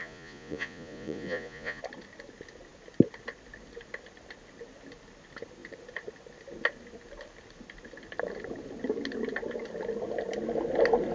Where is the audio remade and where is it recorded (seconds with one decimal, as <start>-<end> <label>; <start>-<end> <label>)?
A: 0.0-1.8 remade; 1.8-11.1 recorded